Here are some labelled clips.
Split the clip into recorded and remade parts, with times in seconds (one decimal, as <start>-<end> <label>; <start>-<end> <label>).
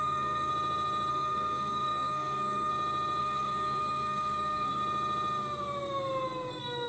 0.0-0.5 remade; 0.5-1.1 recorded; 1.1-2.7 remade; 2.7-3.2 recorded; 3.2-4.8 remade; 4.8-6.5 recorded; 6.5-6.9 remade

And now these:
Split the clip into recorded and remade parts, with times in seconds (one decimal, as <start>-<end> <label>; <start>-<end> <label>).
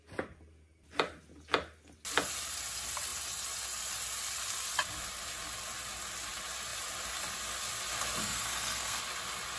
0.0-8.2 recorded; 8.2-9.0 remade; 9.0-9.6 recorded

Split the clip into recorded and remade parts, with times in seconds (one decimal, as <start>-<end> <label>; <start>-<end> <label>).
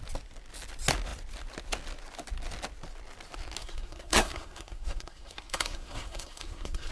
0.0-3.6 recorded; 3.6-6.9 remade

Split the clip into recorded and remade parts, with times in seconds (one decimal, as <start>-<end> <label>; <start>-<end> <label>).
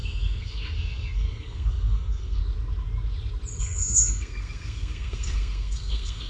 0.0-2.4 remade; 2.4-3.6 recorded; 3.6-6.3 remade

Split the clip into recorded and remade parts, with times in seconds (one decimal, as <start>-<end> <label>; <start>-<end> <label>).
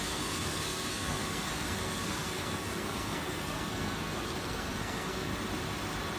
0.0-5.3 remade; 5.3-6.2 recorded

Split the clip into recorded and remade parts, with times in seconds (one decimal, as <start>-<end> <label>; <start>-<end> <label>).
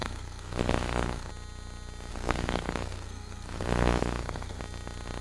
0.0-1.3 remade; 1.3-2.1 recorded; 2.1-4.6 remade; 4.6-5.2 recorded